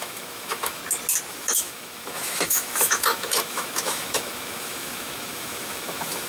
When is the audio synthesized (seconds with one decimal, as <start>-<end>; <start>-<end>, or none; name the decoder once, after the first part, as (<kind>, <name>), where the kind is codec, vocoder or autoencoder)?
0.0-0.8 (autoencoder, DAC-VAE); 1.3-6.3